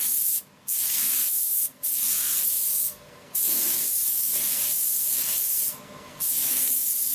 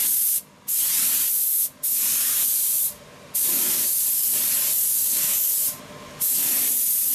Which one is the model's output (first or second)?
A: first